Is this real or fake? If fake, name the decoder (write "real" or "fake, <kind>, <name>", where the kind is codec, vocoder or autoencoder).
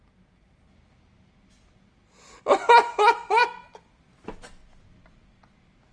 real